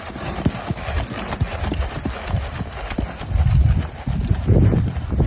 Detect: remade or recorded recorded